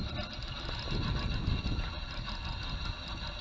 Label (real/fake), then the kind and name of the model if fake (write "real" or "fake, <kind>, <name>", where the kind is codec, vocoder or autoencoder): real